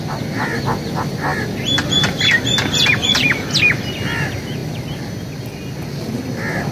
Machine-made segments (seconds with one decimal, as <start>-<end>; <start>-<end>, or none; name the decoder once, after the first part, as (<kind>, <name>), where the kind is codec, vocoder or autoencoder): none